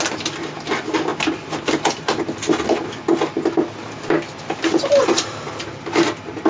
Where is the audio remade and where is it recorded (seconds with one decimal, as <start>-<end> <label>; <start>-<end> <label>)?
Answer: 0.0-6.5 recorded